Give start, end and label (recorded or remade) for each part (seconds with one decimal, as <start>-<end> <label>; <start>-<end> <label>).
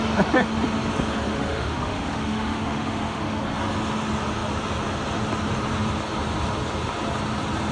0.0-1.3 recorded; 1.3-3.4 remade; 3.4-7.7 recorded